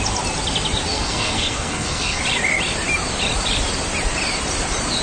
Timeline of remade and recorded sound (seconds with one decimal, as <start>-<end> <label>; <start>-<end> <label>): 0.0-0.9 recorded; 0.9-2.2 remade; 2.2-5.0 recorded